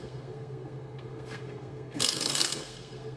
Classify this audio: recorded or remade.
remade